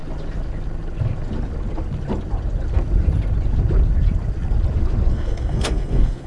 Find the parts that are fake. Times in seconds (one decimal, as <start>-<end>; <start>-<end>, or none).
5.1-6.3